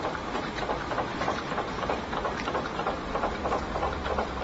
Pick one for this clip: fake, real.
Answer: fake